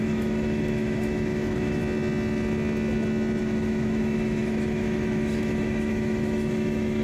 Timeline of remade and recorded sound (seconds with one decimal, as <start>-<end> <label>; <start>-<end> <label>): 0.0-1.8 remade; 1.8-3.4 recorded; 3.4-7.0 remade